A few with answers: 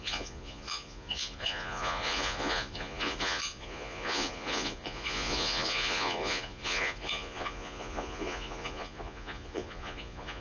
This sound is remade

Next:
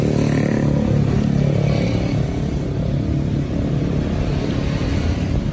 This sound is recorded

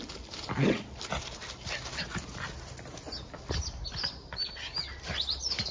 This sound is recorded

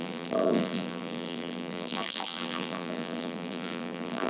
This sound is remade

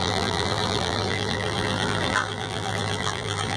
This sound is remade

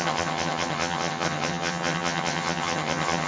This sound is remade